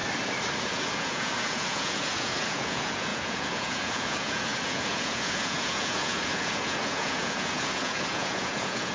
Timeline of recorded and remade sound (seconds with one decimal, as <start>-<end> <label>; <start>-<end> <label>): 0.0-0.6 recorded; 0.6-8.9 remade